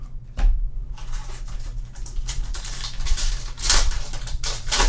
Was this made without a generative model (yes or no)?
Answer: no